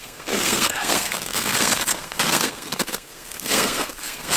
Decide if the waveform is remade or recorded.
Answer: remade